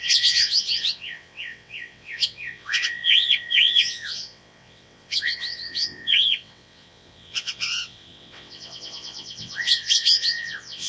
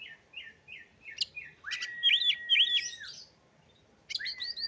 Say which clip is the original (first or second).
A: second